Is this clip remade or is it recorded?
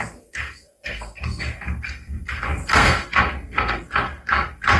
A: remade